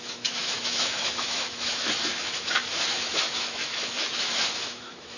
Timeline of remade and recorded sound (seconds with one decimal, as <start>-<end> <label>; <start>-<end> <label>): 0.0-5.2 remade